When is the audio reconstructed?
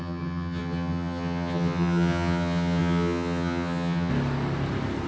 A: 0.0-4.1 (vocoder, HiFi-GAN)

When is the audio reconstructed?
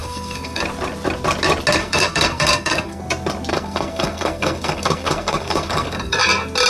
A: 0.0-0.6 (codec, SNAC); 1.8-3.0; 3.5-6.2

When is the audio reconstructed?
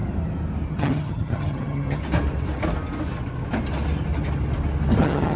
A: 0.7-2.0 (vocoder, HiFi-GAN); 5.0-5.4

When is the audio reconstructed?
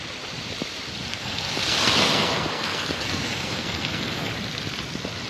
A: 1.1-4.3 (codec, SNAC)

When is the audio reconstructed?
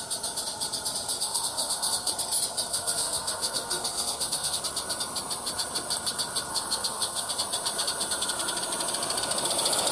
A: 1.2-2.1 (codec, SNAC); 2.7-4.6; 6.5-7.3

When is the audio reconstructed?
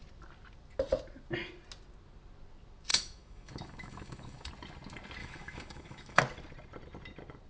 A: 2.9-4.5 (autoencoder, DAC-VAE); 5.2-6.2